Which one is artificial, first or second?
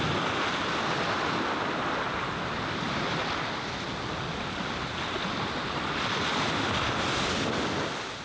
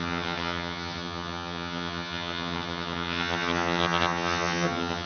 second